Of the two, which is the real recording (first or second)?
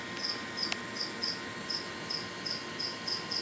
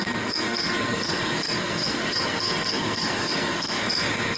first